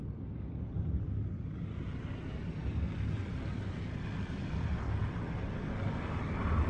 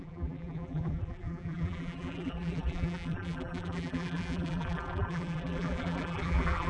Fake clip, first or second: second